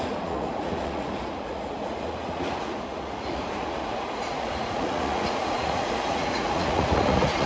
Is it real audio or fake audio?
fake